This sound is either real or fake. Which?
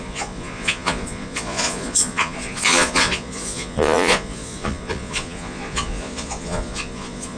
fake